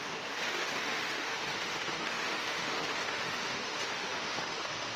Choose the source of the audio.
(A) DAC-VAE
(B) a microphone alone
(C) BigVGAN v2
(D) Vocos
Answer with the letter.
A